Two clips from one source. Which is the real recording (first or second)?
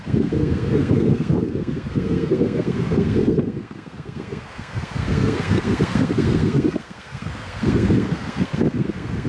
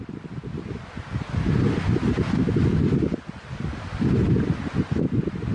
second